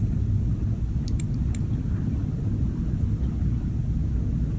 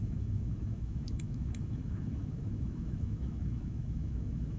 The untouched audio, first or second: first